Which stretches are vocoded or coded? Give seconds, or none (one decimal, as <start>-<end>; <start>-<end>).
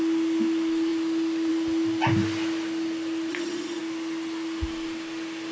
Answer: 3.3-3.8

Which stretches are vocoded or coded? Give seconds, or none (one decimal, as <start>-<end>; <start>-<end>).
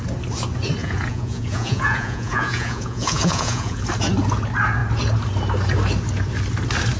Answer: 0.8-3.8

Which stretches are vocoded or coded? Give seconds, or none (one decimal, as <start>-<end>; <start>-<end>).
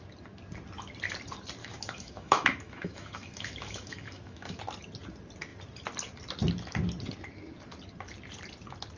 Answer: 1.6-4.6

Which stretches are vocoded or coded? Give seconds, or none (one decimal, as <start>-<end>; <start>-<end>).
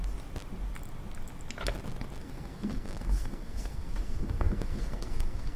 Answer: 2.2-5.6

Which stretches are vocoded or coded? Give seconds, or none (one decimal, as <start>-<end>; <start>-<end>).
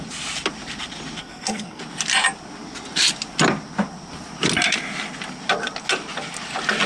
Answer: 1.2-1.8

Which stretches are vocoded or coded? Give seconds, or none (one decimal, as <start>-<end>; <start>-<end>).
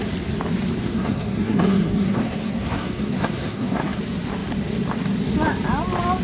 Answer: 0.8-4.0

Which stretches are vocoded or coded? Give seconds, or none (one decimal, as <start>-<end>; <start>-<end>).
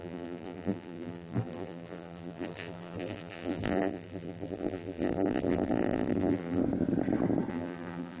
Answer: 0.0-6.6; 7.5-8.2